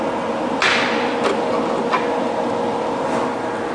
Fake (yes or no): no